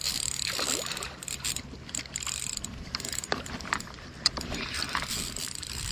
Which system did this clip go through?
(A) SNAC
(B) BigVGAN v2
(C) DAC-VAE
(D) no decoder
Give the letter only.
B